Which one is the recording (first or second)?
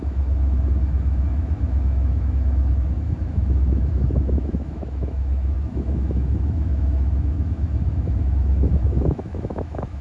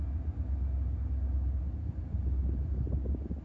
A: second